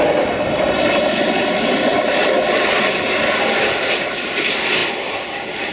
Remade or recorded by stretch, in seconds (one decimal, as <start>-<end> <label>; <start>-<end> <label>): 0.0-5.7 recorded